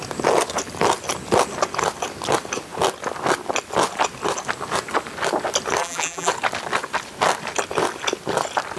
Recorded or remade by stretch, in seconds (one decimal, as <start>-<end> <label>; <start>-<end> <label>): 0.0-5.8 recorded; 5.8-6.3 remade; 6.3-8.8 recorded